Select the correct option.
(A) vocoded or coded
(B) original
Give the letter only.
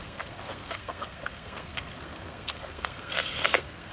A